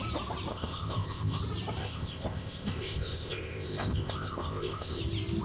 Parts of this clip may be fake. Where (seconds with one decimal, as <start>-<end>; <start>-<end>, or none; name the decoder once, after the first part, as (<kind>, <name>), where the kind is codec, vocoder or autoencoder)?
0.5-1.4 (codec, ZipCodec); 1.8-5.0